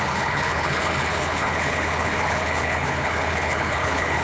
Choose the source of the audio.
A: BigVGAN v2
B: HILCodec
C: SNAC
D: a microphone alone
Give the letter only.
B